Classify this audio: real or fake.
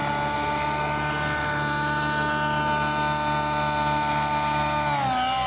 real